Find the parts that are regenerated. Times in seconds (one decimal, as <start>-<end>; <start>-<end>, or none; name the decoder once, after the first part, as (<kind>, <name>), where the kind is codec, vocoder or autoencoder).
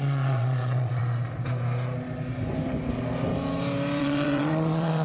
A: 0.0-1.0 (vocoder, Vocos); 4.0-5.0